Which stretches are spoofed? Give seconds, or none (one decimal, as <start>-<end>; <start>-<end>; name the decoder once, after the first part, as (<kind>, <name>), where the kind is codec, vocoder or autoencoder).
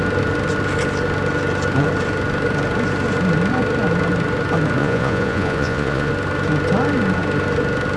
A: 4.8-6.1 (vocoder, Vocos)